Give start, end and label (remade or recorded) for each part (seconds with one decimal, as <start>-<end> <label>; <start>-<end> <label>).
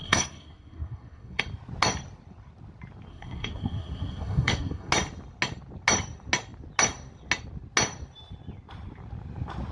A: 0.0-1.4 remade; 1.4-3.1 recorded; 3.1-4.9 remade; 4.9-9.7 recorded